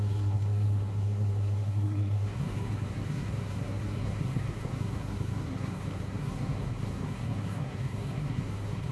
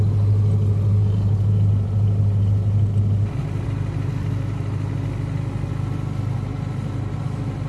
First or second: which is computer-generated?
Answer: first